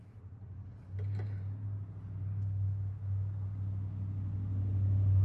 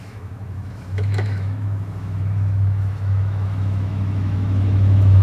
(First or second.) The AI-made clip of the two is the second